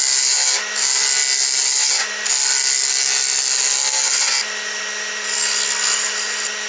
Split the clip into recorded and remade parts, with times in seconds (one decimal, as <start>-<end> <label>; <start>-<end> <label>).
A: 0.0-6.7 recorded